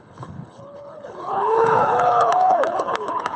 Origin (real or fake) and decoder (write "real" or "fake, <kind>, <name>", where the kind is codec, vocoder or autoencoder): fake, codec, HILCodec